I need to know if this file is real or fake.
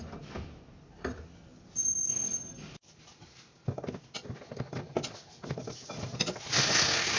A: real